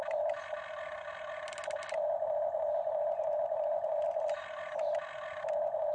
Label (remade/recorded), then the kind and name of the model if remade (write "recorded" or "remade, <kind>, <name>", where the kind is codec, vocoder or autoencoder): recorded